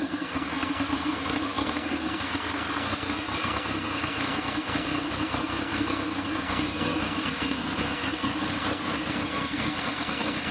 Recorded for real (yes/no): no